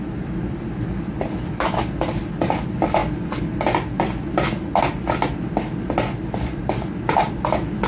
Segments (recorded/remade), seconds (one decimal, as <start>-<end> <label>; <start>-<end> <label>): 0.0-7.9 recorded